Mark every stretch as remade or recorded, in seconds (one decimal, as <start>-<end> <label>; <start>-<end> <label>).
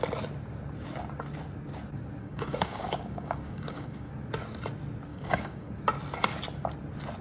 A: 0.0-2.2 recorded; 2.2-4.1 remade; 4.1-5.1 recorded; 5.1-5.7 remade; 5.7-7.2 recorded